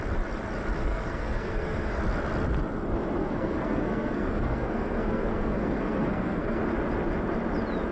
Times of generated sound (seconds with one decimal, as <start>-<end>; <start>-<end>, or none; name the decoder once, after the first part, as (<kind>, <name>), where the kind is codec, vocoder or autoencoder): 0.9-2.0 (codec, SNAC); 3.2-6.6